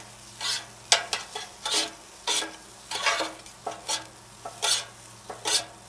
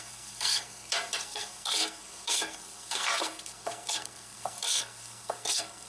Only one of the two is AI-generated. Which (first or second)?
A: second